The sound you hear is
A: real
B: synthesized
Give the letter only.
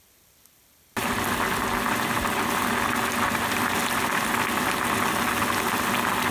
A